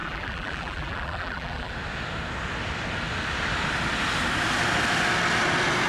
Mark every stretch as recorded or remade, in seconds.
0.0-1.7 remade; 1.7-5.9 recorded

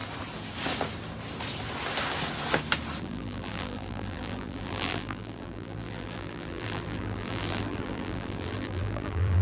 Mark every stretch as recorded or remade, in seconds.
0.0-3.0 recorded; 3.0-9.4 remade

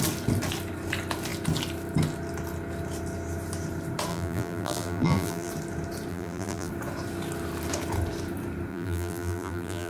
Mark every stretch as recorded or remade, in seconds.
0.0-4.1 recorded; 4.1-5.5 remade; 5.5-6.1 recorded; 6.1-6.7 remade; 6.7-8.7 recorded; 8.7-9.9 remade

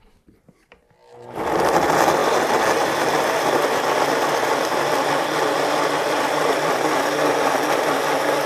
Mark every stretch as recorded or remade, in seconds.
0.0-2.2 recorded; 2.2-6.9 remade; 6.9-8.5 recorded